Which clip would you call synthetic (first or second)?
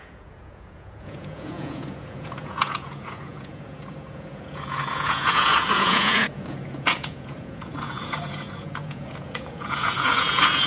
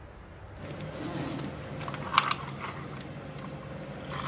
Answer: first